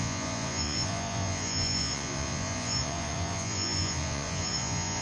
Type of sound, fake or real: fake